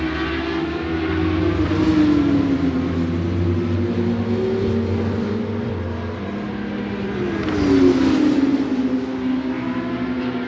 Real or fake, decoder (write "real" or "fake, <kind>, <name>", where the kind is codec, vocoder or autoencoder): real